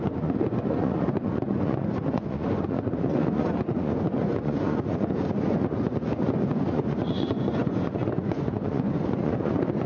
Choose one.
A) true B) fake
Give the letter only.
B